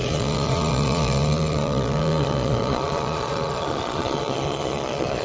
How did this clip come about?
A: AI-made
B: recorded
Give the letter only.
A